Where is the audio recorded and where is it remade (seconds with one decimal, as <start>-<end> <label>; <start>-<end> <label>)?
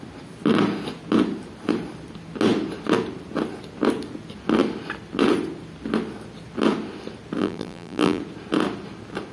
0.0-7.4 recorded; 7.4-8.2 remade; 8.2-9.3 recorded